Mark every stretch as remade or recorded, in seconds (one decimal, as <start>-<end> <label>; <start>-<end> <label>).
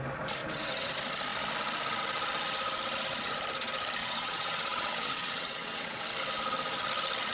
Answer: 0.0-0.4 recorded; 0.4-0.9 remade; 0.9-4.0 recorded; 4.0-6.0 remade; 6.0-7.3 recorded